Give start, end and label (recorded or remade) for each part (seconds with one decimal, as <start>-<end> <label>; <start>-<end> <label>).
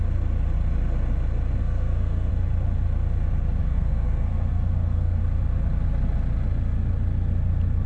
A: 0.0-1.6 recorded; 1.6-2.3 remade; 2.3-3.6 recorded; 3.6-5.2 remade; 5.2-7.9 recorded